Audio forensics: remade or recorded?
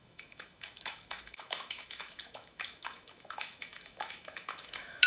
remade